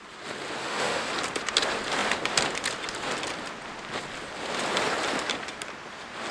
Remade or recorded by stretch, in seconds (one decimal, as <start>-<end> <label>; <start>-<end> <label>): 0.0-0.6 recorded; 0.6-1.1 remade; 1.1-6.3 recorded